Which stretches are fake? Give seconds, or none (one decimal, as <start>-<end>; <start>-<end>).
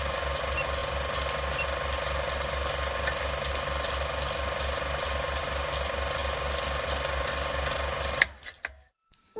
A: none